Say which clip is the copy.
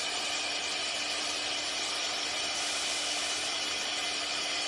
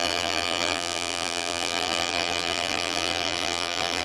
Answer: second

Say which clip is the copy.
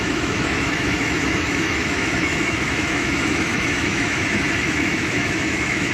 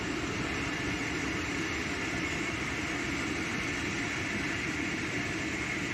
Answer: first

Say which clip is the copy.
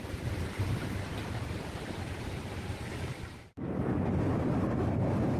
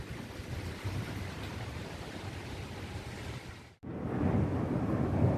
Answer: first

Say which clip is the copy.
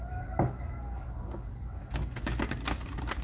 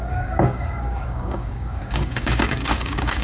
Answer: second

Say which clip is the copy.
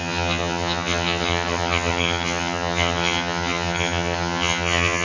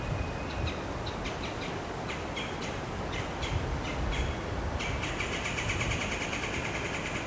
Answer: first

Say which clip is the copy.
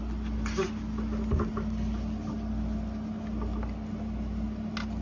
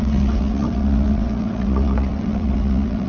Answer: second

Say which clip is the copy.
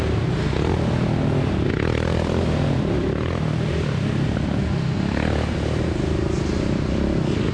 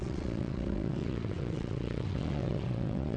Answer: second